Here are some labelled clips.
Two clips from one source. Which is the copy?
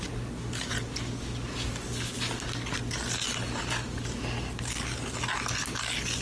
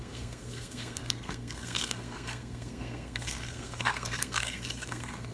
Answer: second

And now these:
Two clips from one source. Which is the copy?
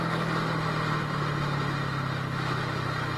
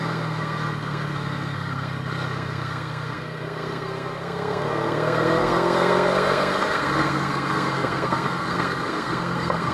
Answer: second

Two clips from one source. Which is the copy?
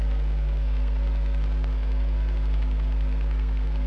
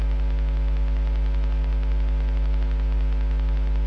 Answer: first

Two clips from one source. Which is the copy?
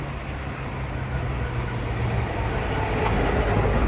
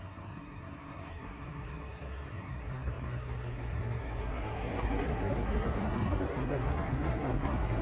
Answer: second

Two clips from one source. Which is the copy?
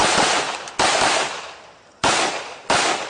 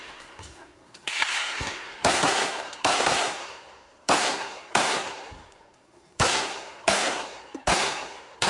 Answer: second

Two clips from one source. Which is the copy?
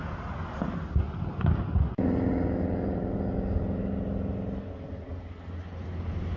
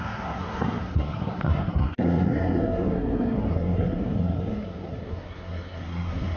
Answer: second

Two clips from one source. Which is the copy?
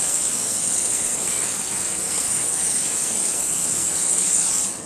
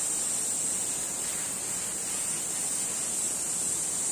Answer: first